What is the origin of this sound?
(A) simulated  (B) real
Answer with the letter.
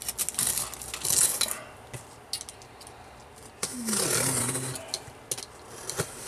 B